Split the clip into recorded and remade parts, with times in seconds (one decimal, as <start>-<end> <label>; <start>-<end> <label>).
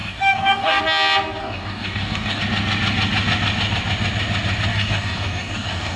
0.0-0.8 remade; 0.8-1.4 recorded; 1.4-2.4 remade; 2.4-4.7 recorded; 4.7-6.0 remade